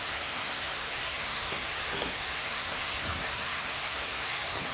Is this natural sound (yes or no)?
no